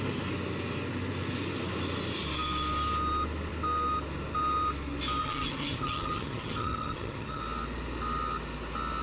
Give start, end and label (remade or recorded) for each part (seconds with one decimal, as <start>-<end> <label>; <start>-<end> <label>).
0.0-5.2 recorded; 5.2-7.4 remade; 7.4-9.0 recorded